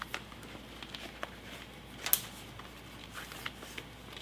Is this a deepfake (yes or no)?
no